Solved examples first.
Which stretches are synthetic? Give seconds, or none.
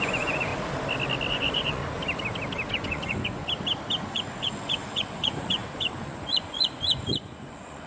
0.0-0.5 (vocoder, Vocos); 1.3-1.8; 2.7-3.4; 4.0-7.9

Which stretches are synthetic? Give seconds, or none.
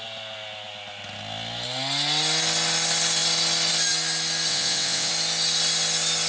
4.5-5.1 (vocoder, WaveNeXt)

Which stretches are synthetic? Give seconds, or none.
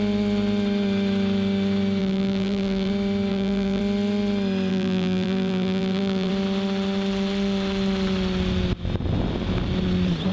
2.0-2.9 (vocoder, BigVGAN v2); 3.3-3.8; 4.7-6.3